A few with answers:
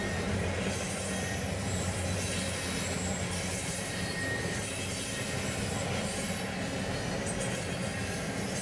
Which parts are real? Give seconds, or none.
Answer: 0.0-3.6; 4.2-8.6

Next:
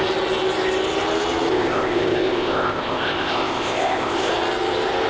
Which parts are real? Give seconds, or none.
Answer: 0.0-1.5; 4.3-5.1

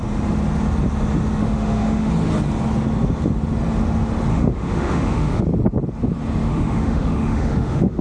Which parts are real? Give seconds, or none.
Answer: 0.0-1.4; 2.1-4.3; 5.4-6.5

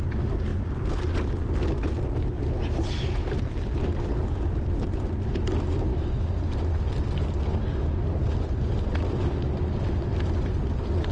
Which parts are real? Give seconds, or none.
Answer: 0.0-11.1

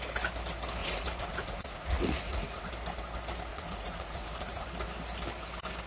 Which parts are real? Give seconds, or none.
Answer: 0.0-0.8; 2.7-3.5; 4.7-5.9

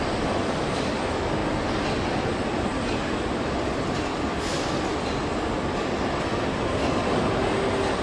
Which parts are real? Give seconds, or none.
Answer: 0.0-8.0

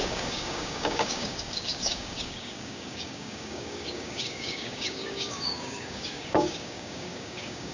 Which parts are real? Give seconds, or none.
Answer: none

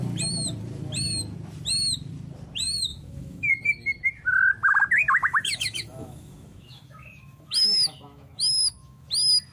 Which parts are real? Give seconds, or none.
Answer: 0.0-2.9; 3.5-5.3; 9.1-9.5